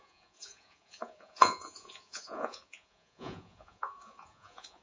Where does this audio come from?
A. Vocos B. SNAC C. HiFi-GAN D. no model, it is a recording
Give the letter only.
A